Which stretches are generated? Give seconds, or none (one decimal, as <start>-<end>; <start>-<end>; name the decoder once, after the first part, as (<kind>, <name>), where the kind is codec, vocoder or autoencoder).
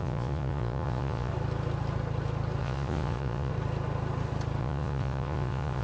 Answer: 0.0-1.3 (vocoder, Vocos); 2.6-3.5; 4.6-5.8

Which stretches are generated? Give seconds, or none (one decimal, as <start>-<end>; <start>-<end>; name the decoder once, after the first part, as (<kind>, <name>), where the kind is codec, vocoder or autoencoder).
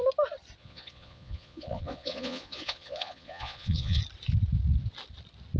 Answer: 0.6-4.0 (vocoder, Vocos)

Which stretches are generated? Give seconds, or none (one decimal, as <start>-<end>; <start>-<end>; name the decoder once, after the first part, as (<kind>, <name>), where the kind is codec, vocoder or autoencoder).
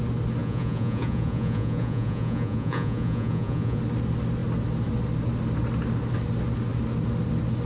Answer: 0.4-3.8 (vocoder, Vocos)